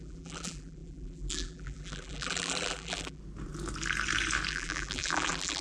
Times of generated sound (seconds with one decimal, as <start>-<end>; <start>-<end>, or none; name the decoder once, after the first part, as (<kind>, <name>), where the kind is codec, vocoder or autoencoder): 0.0-3.2 (vocoder, BigVGAN v2); 4.5-5.6